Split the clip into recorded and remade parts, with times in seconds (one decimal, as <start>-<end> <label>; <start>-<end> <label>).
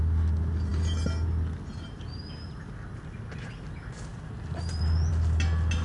0.0-5.8 recorded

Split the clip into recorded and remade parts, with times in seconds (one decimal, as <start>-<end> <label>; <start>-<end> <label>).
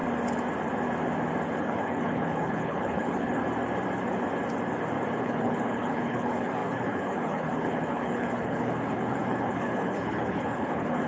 0.0-1.6 recorded; 1.6-3.4 remade; 3.4-5.2 recorded; 5.2-11.1 remade